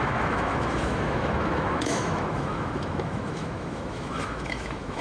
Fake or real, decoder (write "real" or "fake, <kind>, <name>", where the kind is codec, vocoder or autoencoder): fake, autoencoder, DAC-VAE